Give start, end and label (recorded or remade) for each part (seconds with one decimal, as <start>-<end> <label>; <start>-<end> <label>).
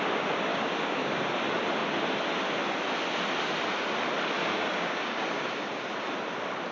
0.0-0.5 recorded; 0.5-1.2 remade; 1.2-4.4 recorded; 4.4-5.7 remade; 5.7-6.7 recorded